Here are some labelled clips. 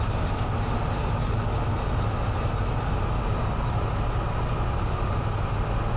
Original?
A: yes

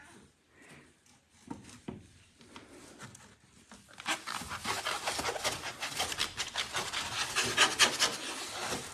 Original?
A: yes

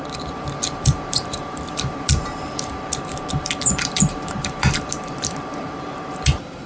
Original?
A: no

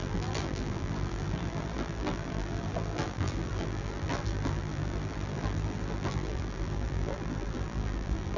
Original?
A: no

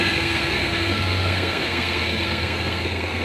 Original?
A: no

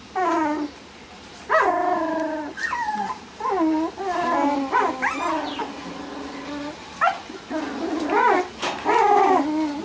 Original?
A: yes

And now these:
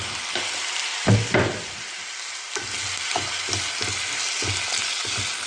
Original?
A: yes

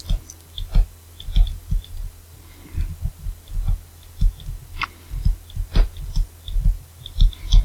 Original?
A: yes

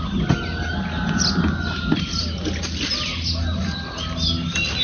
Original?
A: yes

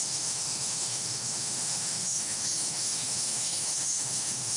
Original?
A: no